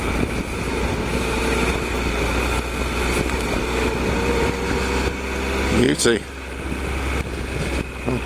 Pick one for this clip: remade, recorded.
recorded